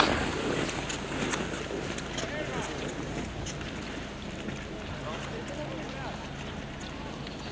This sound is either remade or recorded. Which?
recorded